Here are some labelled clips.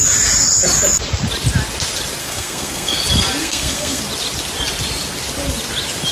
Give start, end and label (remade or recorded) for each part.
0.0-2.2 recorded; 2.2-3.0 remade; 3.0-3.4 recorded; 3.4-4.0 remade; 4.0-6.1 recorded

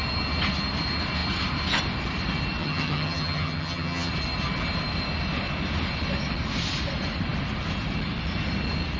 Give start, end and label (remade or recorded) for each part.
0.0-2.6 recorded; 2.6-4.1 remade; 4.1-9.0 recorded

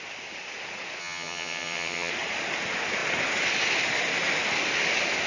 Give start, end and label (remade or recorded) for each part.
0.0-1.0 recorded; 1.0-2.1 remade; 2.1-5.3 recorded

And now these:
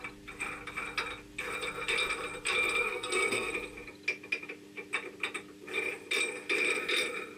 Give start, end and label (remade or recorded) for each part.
0.0-2.8 recorded; 2.8-3.5 remade; 3.5-7.4 recorded

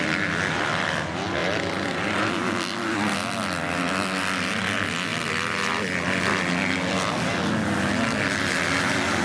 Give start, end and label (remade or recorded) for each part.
0.0-9.2 recorded